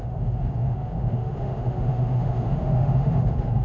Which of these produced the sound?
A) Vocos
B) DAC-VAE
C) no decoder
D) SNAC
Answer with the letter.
B